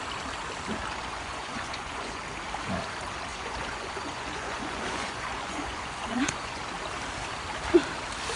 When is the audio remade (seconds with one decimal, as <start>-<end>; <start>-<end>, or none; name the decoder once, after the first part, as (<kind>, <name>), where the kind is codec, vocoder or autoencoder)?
1.0-2.2 (vocoder, Vocos); 3.3-6.6